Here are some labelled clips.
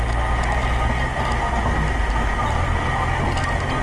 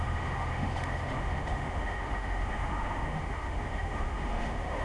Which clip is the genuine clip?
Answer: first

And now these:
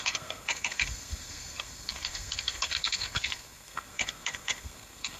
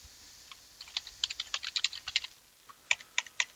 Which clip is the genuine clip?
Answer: second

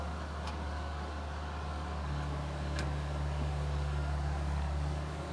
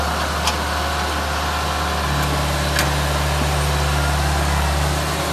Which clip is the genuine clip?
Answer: second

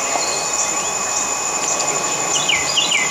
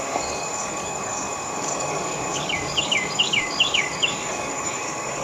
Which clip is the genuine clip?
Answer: first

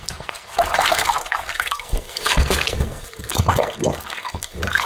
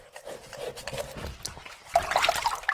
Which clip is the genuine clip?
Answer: second